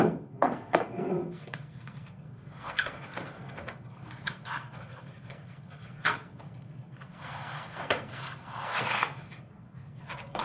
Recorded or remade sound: remade